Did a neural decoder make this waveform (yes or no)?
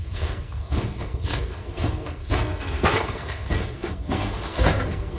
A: yes